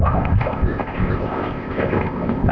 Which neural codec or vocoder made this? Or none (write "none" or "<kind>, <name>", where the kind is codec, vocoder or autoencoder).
codec, ZipCodec